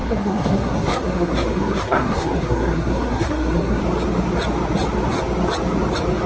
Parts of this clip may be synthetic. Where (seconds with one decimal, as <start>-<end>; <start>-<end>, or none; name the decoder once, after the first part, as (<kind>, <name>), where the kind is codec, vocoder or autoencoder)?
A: 0.0-3.8 (codec, SNAC)